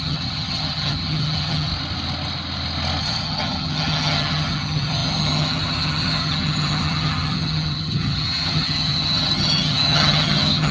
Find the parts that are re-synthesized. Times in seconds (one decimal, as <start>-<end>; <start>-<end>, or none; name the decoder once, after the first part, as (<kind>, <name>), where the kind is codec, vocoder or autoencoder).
0.0-1.7 (vocoder, HiFi-GAN); 3.0-10.7